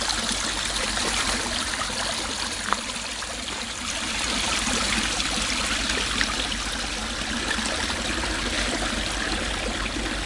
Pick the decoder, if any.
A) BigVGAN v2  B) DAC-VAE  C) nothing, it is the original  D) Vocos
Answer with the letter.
C